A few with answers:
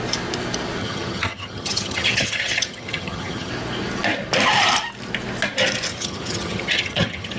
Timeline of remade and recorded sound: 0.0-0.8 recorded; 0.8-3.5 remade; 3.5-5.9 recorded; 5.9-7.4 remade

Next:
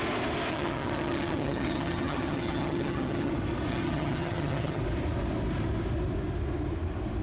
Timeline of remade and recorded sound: 0.0-0.5 recorded; 0.5-3.3 remade; 3.3-3.7 recorded; 3.7-4.8 remade; 4.8-7.2 recorded

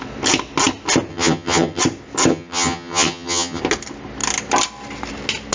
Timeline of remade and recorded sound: 0.0-1.1 recorded; 1.1-1.8 remade; 1.8-2.3 recorded; 2.3-3.6 remade; 3.6-5.5 recorded